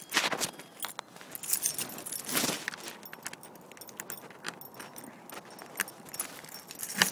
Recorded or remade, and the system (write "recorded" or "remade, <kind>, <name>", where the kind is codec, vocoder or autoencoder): recorded